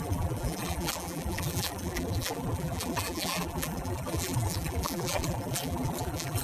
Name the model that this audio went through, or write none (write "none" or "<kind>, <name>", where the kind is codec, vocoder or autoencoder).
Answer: vocoder, BigVGAN v2